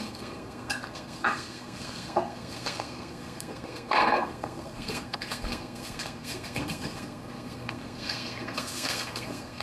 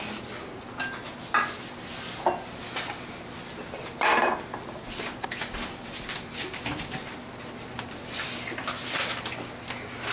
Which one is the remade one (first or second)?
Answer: first